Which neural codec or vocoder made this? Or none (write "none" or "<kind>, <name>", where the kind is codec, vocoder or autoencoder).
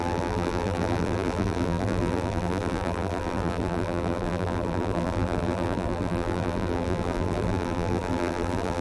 vocoder, BigVGAN v2